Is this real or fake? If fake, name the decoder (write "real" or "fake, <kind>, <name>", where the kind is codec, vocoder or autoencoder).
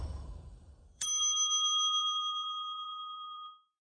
fake, vocoder, BigVGAN v2